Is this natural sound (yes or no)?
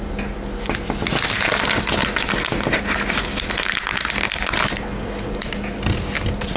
yes